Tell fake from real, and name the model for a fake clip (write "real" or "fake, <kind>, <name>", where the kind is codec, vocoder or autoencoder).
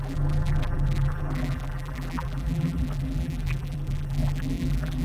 fake, vocoder, BigVGAN v2